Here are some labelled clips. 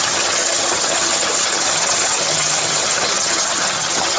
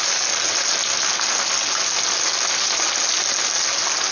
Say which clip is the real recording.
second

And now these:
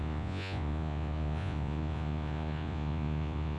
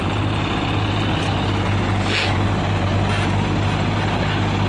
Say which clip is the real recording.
second